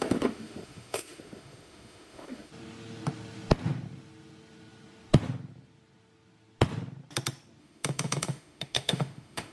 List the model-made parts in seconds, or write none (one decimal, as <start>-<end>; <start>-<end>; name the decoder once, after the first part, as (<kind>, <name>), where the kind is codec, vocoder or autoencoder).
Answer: 0.0-2.5 (autoencoder, DAC-VAE); 7.6-9.5